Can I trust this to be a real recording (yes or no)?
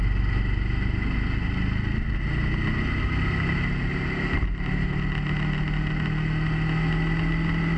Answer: yes